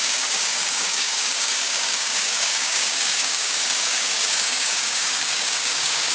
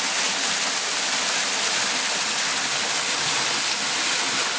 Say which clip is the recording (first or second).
second